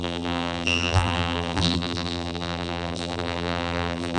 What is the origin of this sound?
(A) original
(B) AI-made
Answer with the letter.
B